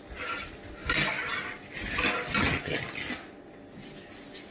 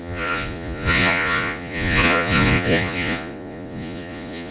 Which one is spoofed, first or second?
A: second